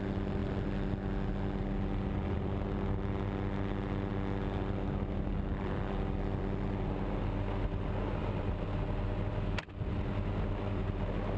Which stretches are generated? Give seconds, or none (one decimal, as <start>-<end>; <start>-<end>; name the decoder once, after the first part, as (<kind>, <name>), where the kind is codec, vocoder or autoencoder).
none